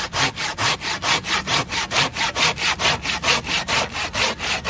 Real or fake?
real